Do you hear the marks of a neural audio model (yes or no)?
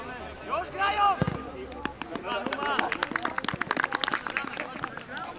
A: no